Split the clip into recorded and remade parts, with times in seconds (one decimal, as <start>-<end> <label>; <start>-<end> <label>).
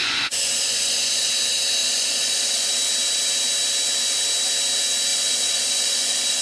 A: 0.0-1.3 remade; 1.3-1.8 recorded; 1.8-2.7 remade; 2.7-5.1 recorded; 5.1-6.4 remade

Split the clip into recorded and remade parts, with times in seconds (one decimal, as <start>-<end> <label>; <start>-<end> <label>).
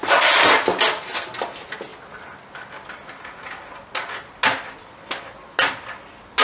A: 0.0-6.4 recorded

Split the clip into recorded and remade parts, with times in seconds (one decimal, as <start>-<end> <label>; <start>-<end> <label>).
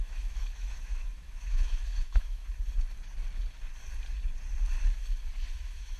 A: 0.0-2.4 remade; 2.4-5.5 recorded; 5.5-6.0 remade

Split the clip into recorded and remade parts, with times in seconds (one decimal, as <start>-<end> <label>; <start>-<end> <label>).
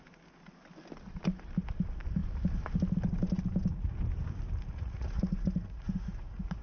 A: 0.0-4.7 recorded; 4.7-6.6 remade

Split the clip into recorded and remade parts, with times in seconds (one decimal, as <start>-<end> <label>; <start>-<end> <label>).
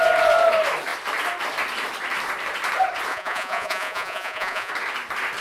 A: 0.0-3.1 recorded; 3.1-4.7 remade; 4.7-5.4 recorded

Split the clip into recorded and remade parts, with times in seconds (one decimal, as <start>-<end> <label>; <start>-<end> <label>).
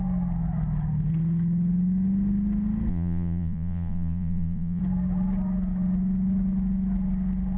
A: 0.0-2.9 recorded; 2.9-4.8 remade; 4.8-7.6 recorded